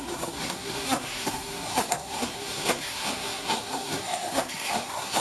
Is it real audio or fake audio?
fake